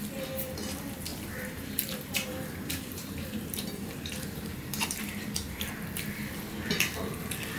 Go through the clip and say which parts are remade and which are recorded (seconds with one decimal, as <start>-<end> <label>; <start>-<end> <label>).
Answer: 0.0-1.1 recorded; 1.1-5.7 remade; 5.7-7.6 recorded